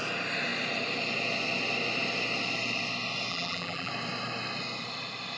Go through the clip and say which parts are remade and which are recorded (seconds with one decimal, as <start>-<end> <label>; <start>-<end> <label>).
0.0-3.3 recorded; 3.3-3.9 remade; 3.9-5.4 recorded

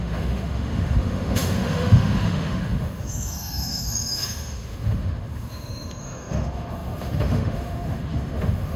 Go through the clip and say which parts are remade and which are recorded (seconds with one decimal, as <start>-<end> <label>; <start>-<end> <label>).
0.0-8.8 remade